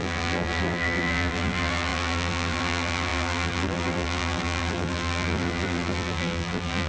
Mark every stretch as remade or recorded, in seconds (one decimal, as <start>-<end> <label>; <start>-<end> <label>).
0.0-6.9 remade